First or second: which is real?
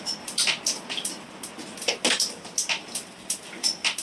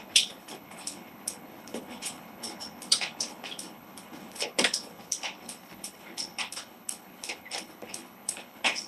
first